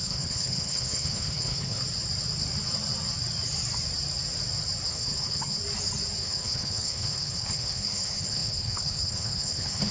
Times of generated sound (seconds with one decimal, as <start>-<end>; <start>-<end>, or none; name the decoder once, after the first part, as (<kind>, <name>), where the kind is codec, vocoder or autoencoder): 0.0-1.8 (codec, HILCodec); 4.9-5.6; 6.2-9.9